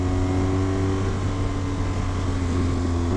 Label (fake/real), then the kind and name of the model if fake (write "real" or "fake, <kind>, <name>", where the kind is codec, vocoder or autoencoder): real